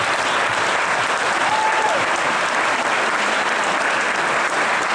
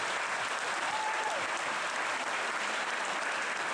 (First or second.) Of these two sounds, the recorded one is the first